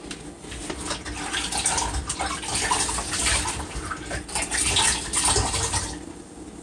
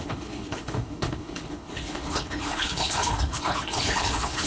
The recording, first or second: first